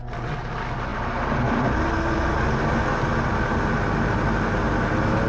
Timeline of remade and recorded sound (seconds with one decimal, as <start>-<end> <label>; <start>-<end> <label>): 0.0-5.3 recorded